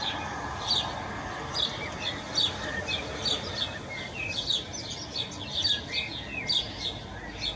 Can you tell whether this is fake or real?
real